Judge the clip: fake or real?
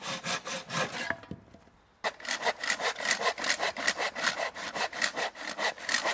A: real